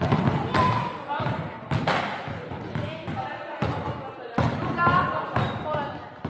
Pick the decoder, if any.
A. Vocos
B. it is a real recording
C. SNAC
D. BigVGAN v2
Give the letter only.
B